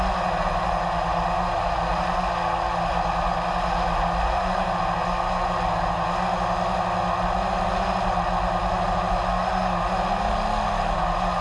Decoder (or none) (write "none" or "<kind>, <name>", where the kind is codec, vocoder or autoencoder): none